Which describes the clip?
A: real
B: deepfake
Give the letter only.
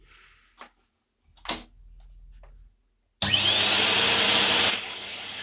A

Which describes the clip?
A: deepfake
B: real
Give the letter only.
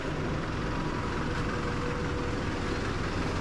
B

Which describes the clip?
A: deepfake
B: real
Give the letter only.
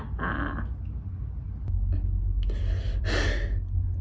B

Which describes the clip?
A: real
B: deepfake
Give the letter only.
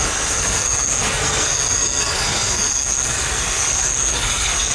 B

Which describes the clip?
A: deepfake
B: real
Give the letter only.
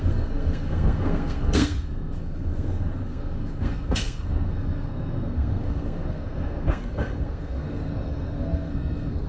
A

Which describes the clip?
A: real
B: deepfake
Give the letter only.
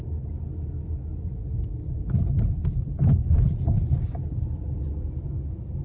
A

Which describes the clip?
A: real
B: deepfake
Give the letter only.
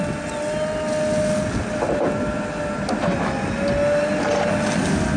A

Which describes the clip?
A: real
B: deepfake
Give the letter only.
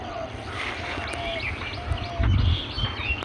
A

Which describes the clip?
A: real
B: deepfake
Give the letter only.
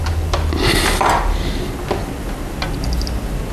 A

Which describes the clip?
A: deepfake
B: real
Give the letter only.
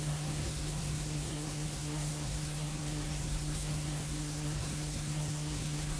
A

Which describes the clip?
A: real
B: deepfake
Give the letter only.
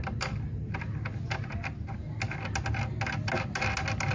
A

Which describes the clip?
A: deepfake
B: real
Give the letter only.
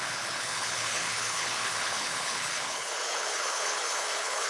A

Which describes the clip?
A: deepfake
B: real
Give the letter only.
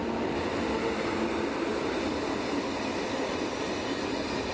B